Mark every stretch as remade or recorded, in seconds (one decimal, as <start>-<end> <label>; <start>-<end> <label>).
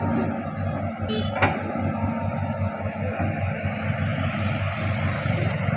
0.0-4.1 recorded; 4.1-5.0 remade; 5.0-5.8 recorded